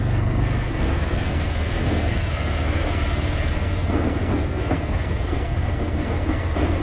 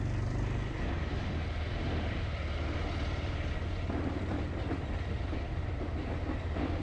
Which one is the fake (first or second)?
first